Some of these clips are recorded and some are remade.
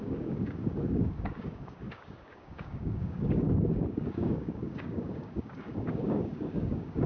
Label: remade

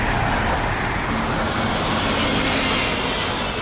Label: recorded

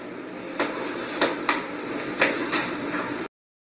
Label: recorded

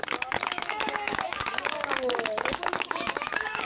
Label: remade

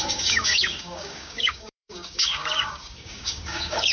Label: remade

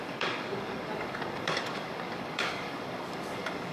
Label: remade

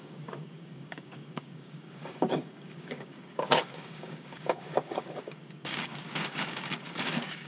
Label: remade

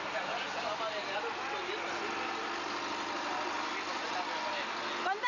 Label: recorded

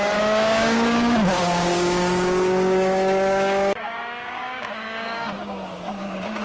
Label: remade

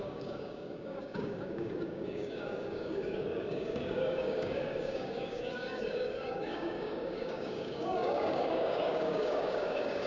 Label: remade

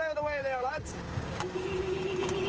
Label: remade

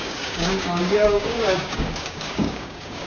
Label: remade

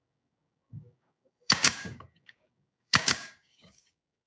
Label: remade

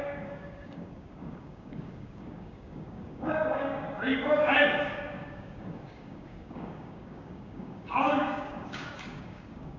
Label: remade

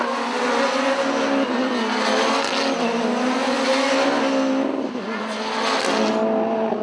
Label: recorded